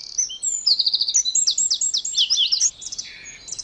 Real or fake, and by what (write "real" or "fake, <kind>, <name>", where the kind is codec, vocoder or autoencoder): real